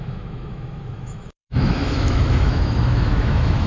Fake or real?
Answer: fake